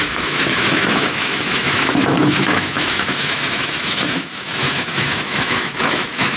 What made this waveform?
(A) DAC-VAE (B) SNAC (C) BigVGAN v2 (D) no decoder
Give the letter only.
A